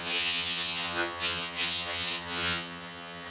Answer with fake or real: fake